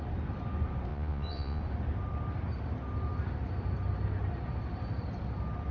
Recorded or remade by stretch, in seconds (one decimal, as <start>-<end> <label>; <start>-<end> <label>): 0.0-0.9 recorded; 0.9-1.6 remade; 1.6-5.7 recorded